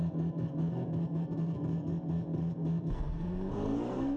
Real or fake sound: fake